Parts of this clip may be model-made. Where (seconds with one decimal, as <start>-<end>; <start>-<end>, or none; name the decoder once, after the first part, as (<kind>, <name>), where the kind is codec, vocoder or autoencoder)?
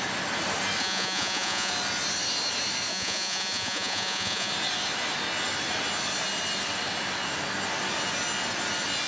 0.8-1.7 (vocoder, Vocos); 2.9-4.5